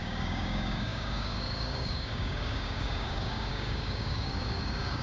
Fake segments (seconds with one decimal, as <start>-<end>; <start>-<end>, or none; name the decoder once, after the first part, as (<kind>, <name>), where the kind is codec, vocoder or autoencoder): 0.0-5.0 (codec, DAC)